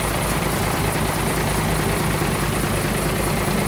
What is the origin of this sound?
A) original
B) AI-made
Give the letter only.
A